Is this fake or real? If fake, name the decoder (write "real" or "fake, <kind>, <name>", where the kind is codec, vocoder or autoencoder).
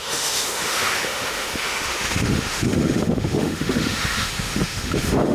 fake, autoencoder, DAC-VAE